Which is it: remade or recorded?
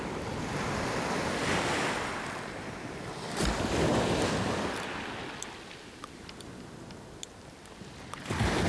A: recorded